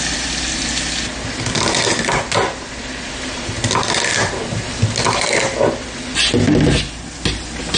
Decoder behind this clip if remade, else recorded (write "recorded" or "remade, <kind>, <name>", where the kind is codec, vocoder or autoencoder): recorded